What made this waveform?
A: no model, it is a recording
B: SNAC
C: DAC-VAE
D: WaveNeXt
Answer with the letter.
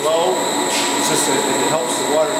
A